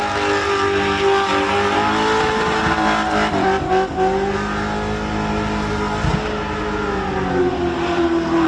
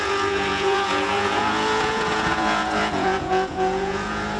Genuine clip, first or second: first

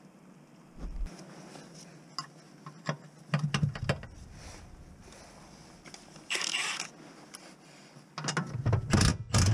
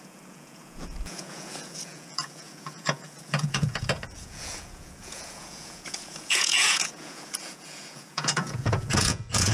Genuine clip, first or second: first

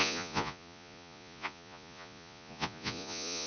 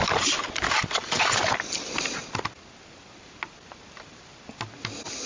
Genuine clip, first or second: second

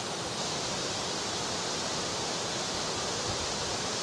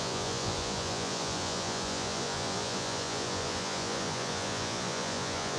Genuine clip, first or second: first